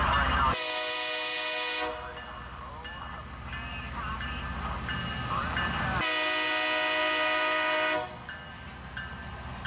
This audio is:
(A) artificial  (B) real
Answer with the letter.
B